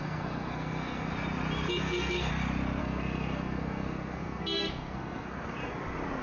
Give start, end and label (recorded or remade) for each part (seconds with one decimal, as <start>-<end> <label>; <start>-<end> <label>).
0.0-1.1 remade; 1.1-1.8 recorded; 1.8-2.3 remade; 2.3-2.8 recorded; 2.8-5.6 remade; 5.6-6.2 recorded